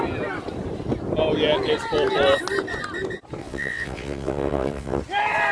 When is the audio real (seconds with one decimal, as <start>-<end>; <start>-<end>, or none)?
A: 0.0-3.4; 5.0-5.5